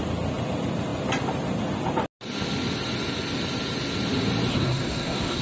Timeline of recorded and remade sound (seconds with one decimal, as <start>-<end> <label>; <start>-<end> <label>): 0.0-4.5 recorded; 4.5-5.4 remade